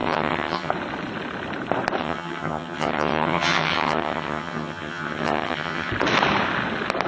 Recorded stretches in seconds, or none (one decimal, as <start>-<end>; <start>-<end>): 0.7-2.0; 5.9-7.1